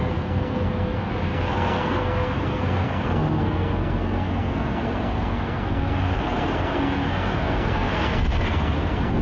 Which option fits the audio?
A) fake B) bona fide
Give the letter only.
A